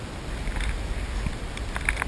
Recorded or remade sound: recorded